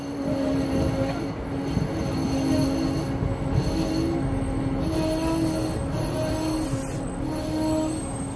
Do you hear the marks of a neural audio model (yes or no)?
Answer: no